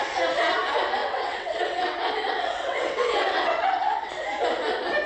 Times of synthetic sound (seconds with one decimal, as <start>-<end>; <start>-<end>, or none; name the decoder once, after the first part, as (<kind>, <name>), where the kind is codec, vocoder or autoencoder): 1.0-4.1 (vocoder, WaveNeXt)